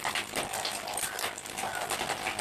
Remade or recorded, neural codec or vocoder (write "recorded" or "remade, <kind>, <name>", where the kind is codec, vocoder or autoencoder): recorded